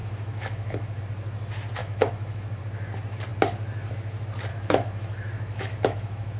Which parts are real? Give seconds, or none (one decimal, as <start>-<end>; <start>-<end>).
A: 1.0-1.8; 2.6-4.5